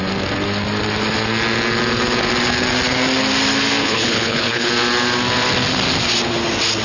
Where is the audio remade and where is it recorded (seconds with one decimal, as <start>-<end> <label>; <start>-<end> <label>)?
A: 0.0-3.8 recorded; 3.8-4.7 remade; 4.7-6.8 recorded